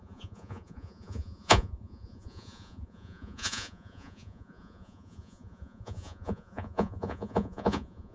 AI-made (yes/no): yes